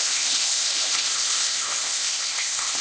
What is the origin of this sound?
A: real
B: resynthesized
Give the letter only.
B